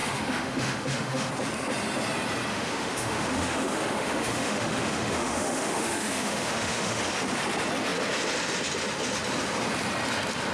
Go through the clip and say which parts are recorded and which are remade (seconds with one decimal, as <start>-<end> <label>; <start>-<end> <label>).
0.0-1.3 remade; 1.3-2.5 recorded; 2.5-7.0 remade; 7.0-10.5 recorded